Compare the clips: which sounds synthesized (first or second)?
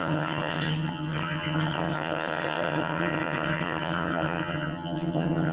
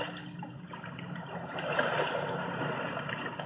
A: first